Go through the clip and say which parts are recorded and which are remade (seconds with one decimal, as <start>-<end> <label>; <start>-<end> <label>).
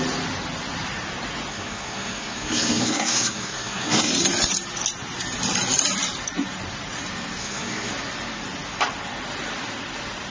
0.0-1.5 recorded; 1.5-4.1 remade; 4.1-7.4 recorded; 7.4-7.9 remade; 7.9-10.3 recorded